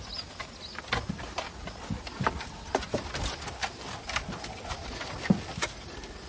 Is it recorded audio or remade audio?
recorded